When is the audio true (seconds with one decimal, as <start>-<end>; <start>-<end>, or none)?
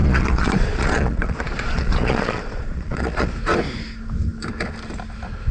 3.3-5.5